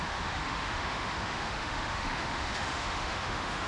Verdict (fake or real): fake